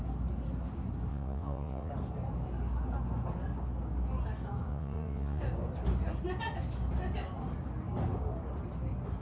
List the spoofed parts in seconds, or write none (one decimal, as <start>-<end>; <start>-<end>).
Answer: 1.1-1.9; 4.7-5.4